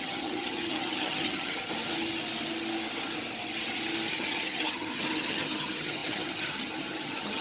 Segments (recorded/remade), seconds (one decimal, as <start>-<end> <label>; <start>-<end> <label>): 0.0-1.6 remade; 1.6-4.1 recorded; 4.1-7.4 remade